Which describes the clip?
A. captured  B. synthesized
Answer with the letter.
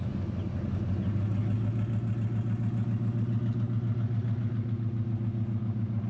A